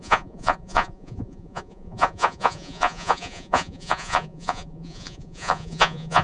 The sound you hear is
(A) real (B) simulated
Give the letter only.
B